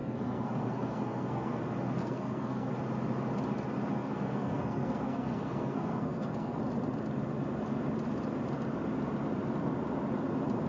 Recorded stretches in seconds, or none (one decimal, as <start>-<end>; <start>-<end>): 1.6-2.0; 2.7-4.0; 6.6-10.7